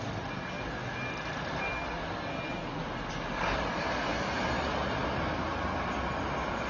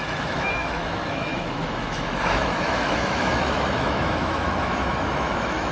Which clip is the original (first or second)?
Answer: first